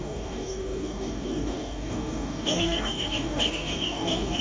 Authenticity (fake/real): fake